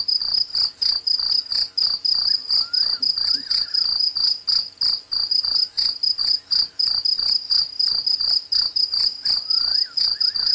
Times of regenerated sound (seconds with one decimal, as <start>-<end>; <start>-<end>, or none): none